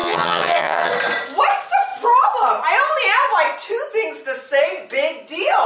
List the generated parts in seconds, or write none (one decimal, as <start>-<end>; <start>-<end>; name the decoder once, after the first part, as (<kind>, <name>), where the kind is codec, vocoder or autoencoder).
0.0-0.9 (vocoder, HiFi-GAN)